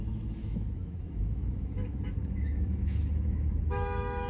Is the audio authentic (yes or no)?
no